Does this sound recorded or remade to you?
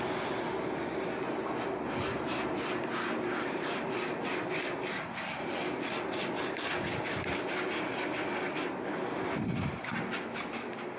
recorded